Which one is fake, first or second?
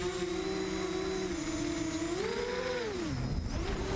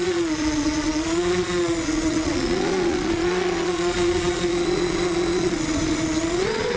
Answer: second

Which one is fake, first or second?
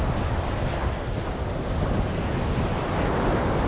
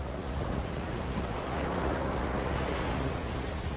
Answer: second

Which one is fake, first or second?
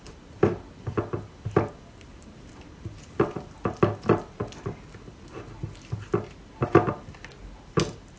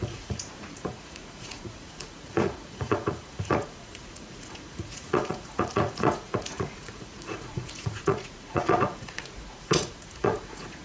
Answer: second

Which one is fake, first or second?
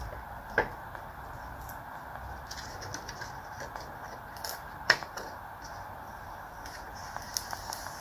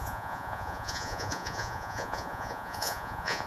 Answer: second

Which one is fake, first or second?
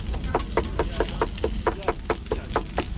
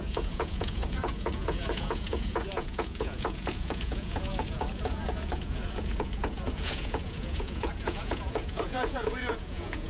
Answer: second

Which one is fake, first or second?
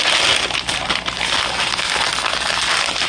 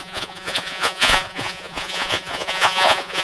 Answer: second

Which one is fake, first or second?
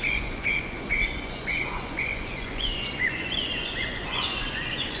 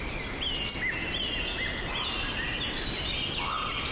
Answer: first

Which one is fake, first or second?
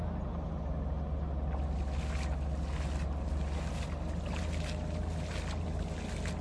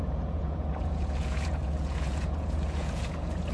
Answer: second